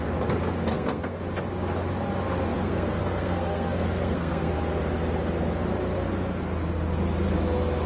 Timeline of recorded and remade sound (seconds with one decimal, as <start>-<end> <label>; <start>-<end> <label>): 0.0-0.7 recorded; 0.7-1.2 remade; 1.2-2.5 recorded; 2.5-4.5 remade; 4.5-7.9 recorded